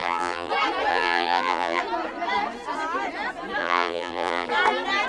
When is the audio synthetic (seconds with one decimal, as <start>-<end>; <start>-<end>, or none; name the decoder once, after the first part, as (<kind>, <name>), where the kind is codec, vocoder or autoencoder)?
0.0-0.5 (vocoder, BigVGAN v2); 0.9-1.8; 3.6-4.5